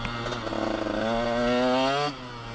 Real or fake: real